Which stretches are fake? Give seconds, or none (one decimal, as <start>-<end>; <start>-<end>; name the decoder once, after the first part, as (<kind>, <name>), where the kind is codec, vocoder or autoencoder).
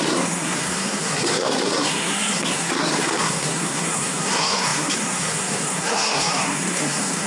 0.0-7.3 (codec, SNAC)